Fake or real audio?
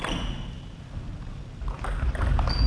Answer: real